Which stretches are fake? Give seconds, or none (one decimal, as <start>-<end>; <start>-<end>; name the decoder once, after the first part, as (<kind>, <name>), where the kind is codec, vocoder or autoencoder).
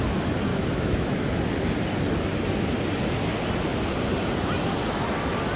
0.5-1.4 (autoencoder, DAC-VAE)